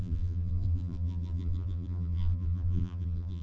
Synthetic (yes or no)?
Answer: yes